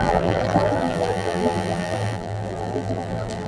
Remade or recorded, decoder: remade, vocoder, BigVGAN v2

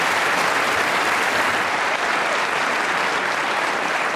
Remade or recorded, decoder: recorded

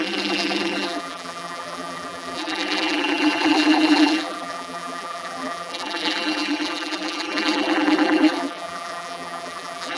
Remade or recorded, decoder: remade, vocoder, BigVGAN v2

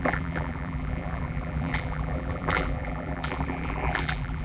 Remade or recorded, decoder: remade, vocoder, BigVGAN v2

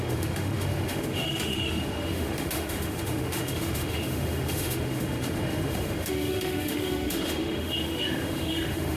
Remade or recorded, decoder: remade, autoencoder, DAC-VAE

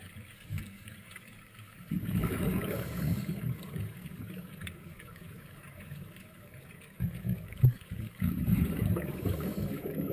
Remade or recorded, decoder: remade, codec, DAC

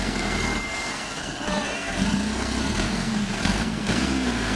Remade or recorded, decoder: remade, codec, SNAC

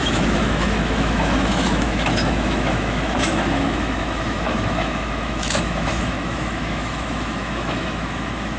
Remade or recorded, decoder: remade, autoencoder, DAC-VAE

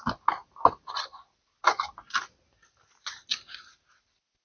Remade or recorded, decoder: recorded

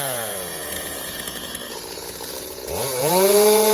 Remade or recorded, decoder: remade, vocoder, Vocos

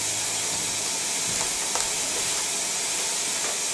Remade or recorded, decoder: recorded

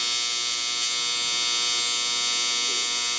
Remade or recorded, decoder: recorded